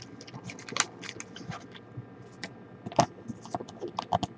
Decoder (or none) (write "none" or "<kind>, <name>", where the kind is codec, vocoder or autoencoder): none